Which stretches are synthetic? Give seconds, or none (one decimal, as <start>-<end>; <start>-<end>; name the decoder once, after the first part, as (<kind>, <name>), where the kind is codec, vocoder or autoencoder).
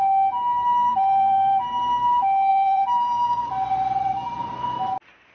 0.9-1.7 (vocoder, BigVGAN v2); 2.5-4.5